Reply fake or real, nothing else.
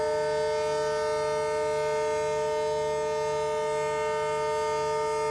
real